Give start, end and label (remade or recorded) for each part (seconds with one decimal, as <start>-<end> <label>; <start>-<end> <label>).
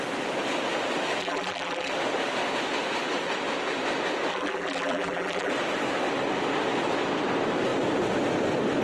0.0-1.2 recorded; 1.2-1.9 remade; 1.9-4.3 recorded; 4.3-5.5 remade; 5.5-8.8 recorded